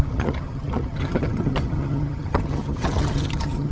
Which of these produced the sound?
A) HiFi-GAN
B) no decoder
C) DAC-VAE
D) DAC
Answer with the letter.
A